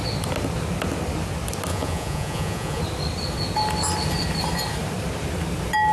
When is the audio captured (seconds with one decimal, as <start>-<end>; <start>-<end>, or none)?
0.0-1.7; 2.8-5.9